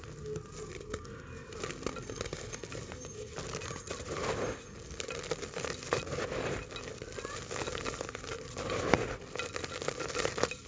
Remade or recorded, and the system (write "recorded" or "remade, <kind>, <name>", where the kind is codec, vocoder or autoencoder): recorded